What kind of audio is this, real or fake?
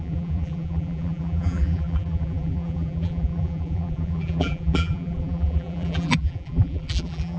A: fake